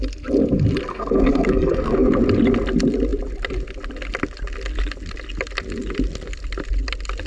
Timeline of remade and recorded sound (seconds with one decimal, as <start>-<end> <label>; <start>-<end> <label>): 0.0-0.9 recorded; 0.9-2.1 remade; 2.1-7.3 recorded